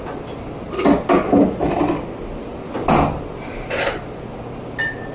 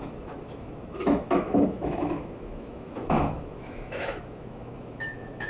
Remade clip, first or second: second